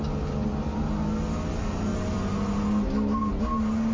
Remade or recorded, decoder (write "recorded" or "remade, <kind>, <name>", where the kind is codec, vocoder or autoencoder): recorded